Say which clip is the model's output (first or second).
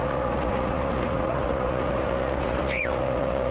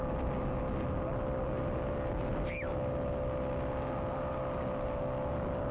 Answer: first